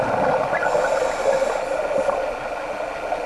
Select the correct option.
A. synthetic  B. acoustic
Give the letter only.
B